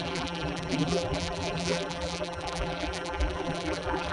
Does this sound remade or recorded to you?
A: remade